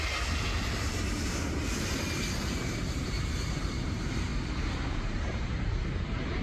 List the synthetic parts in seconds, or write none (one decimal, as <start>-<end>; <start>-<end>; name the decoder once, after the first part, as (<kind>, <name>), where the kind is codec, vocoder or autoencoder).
0.0-4.3 (vocoder, BigVGAN v2); 4.9-6.4